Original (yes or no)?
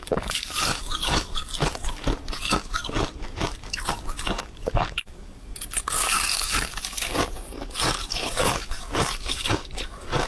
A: no